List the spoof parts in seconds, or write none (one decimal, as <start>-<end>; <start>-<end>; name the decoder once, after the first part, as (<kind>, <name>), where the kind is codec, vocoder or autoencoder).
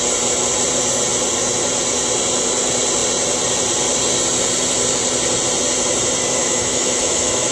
6.4-7.5 (autoencoder, DAC-VAE)